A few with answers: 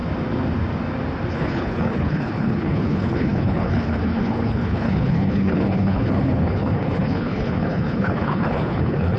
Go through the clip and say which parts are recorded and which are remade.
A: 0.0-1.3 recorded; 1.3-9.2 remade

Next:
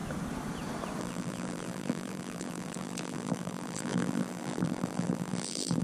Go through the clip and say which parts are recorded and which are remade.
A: 0.0-1.0 recorded; 1.0-5.8 remade

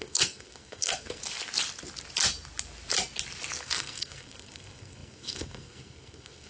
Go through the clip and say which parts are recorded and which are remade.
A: 0.0-1.2 remade; 1.2-3.6 recorded; 3.6-6.5 remade

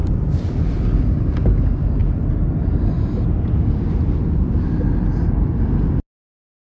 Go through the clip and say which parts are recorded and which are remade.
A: 0.0-0.8 remade; 0.8-6.6 recorded

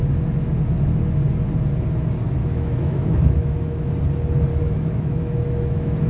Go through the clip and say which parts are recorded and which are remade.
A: 0.0-2.4 recorded; 2.4-3.9 remade; 3.9-4.5 recorded; 4.5-6.1 remade